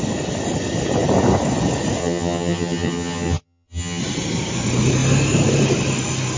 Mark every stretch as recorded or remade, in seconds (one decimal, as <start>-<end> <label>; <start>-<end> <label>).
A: 0.0-2.0 recorded; 2.0-4.0 remade; 4.0-6.4 recorded

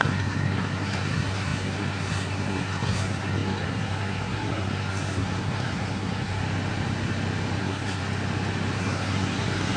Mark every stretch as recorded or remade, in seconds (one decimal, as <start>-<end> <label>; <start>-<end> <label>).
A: 0.0-6.4 remade; 6.4-7.6 recorded; 7.6-8.0 remade; 8.0-8.8 recorded; 8.8-9.8 remade

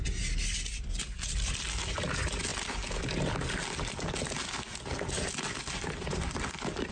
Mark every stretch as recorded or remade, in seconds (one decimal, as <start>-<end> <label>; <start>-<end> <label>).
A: 0.0-6.9 recorded

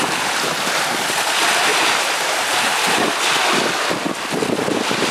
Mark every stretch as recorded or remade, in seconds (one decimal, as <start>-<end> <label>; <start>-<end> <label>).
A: 0.0-1.7 recorded; 1.7-3.0 remade; 3.0-5.1 recorded

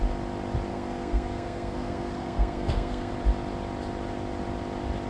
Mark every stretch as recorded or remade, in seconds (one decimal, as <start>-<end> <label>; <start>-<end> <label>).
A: 0.0-0.7 recorded; 0.7-3.1 remade; 3.1-5.1 recorded

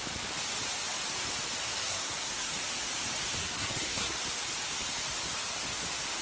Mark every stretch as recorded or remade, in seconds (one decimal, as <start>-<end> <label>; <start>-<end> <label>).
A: 0.0-1.6 recorded; 1.6-2.5 remade; 2.5-3.4 recorded; 3.4-4.2 remade; 4.2-6.2 recorded

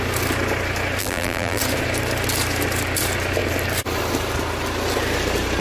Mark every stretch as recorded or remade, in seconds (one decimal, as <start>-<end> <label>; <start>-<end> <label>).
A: 0.0-1.0 recorded; 1.0-1.6 remade; 1.6-5.6 recorded